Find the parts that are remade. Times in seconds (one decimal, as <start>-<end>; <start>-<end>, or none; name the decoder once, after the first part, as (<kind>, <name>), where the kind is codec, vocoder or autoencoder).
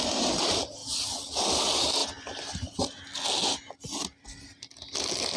0.8-1.6 (vocoder, BigVGAN v2); 2.0-2.8